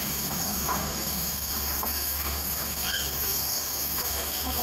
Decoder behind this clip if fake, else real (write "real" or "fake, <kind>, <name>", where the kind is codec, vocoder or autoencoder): fake, codec, DAC